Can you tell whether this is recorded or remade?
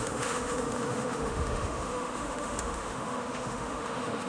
remade